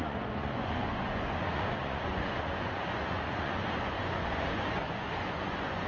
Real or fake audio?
fake